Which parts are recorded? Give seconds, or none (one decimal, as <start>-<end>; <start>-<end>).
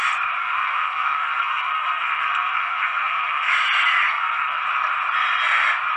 0.0-0.4; 3.5-4.1; 4.6-6.0